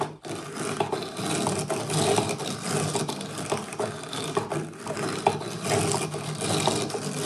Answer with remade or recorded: recorded